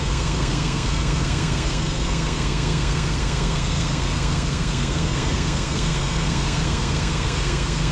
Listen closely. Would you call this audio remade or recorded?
remade